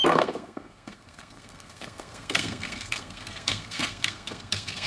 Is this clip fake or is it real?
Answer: fake